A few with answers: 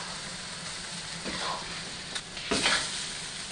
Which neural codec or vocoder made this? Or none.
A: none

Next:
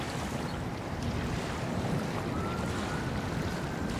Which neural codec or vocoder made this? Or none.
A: vocoder, BigVGAN v2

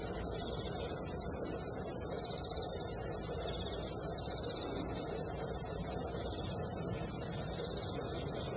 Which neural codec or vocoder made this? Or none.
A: vocoder, BigVGAN v2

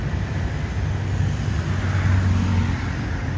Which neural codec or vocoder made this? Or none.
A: none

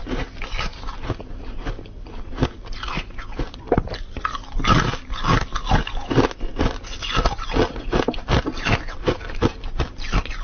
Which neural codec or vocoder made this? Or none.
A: none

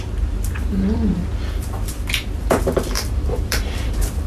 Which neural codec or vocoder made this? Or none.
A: vocoder, BigVGAN v2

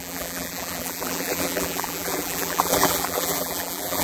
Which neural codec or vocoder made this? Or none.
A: vocoder, BigVGAN v2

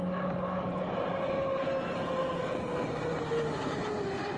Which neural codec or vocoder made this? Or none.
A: none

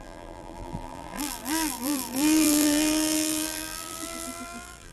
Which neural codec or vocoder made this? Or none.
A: vocoder, BigVGAN v2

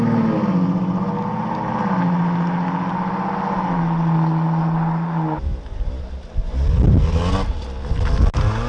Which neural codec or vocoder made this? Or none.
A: none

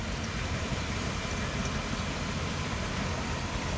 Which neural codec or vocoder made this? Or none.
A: none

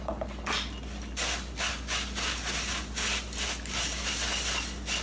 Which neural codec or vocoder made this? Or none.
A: none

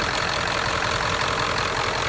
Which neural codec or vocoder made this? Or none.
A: vocoder, BigVGAN v2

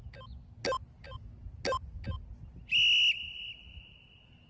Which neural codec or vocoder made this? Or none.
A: none